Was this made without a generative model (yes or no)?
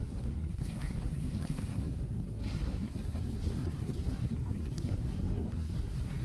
no